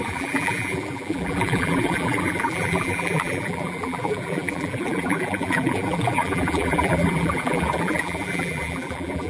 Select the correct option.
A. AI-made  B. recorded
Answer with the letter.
A